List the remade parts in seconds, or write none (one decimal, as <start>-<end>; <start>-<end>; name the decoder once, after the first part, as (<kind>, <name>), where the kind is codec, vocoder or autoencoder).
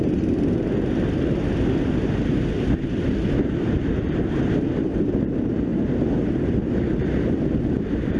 5.7-6.7 (vocoder, BigVGAN v2)